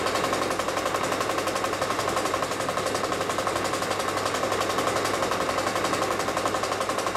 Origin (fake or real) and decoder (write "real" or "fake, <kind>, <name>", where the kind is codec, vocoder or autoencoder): real